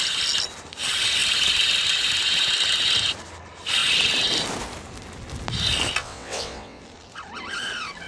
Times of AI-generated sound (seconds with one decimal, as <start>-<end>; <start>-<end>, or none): 6.0-6.8